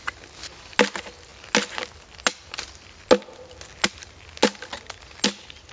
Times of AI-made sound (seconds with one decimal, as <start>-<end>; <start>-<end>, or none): none